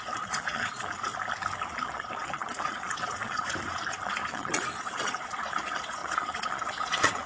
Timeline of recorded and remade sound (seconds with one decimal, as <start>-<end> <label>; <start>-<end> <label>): 0.0-1.1 remade; 1.1-1.7 recorded; 1.7-7.3 remade